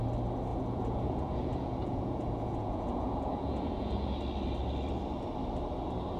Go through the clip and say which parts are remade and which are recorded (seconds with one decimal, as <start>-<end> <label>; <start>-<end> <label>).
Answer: 0.0-0.5 recorded; 0.5-4.2 remade; 4.2-6.2 recorded